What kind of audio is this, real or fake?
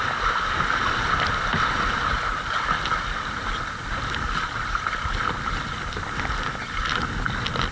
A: real